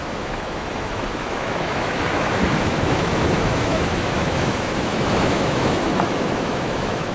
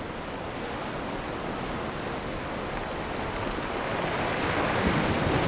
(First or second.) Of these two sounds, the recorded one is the second